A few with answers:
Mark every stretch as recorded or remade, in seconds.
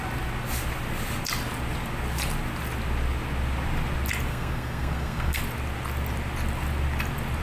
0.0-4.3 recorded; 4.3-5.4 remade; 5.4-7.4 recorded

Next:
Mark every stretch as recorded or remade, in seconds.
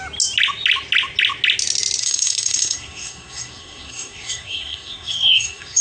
0.0-2.0 recorded; 2.0-5.8 remade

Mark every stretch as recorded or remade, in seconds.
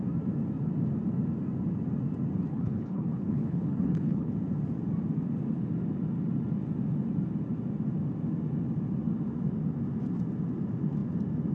0.0-2.5 recorded; 2.5-4.3 remade; 4.3-11.5 recorded